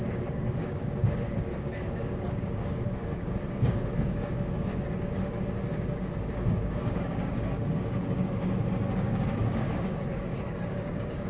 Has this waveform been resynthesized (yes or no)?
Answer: yes